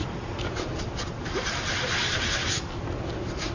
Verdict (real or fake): real